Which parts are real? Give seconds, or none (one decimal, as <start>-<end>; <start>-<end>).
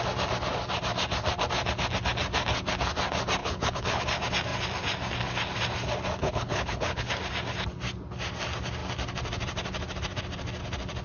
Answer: 0.0-3.4; 4.0-6.2; 7.2-11.0